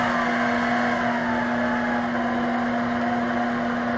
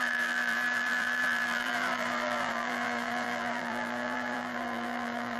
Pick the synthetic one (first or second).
second